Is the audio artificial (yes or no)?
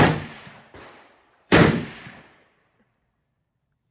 yes